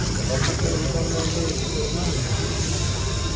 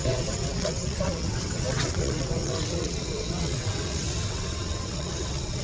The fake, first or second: second